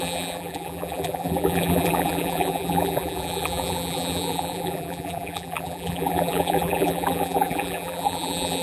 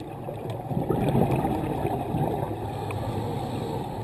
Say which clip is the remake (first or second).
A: first